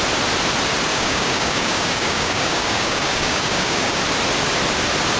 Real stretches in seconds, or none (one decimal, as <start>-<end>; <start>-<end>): 0.0-0.9; 4.0-5.2